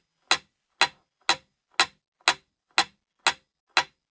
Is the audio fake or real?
real